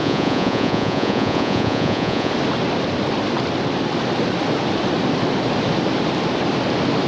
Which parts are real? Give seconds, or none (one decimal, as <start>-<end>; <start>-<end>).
2.3-7.1